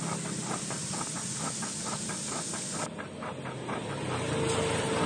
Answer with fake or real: real